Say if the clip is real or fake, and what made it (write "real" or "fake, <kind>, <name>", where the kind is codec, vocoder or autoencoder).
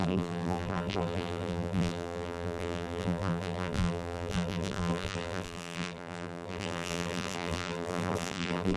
fake, vocoder, BigVGAN v2